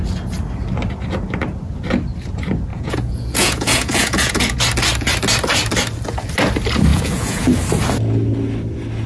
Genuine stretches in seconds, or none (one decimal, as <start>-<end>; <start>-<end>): 0.0-2.7; 4.6-6.9; 7.5-9.1